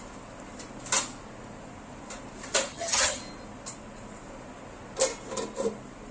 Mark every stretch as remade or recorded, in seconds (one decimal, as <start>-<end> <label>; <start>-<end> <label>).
0.0-2.7 recorded; 2.7-3.2 remade; 3.2-6.1 recorded

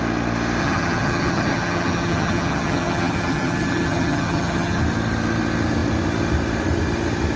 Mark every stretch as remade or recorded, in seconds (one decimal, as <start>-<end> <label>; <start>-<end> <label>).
0.0-0.6 recorded; 0.6-4.8 remade; 4.8-7.4 recorded